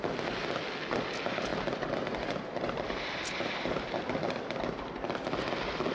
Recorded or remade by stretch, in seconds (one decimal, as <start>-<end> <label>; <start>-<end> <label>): 0.0-1.5 recorded; 1.5-4.0 remade; 4.0-5.9 recorded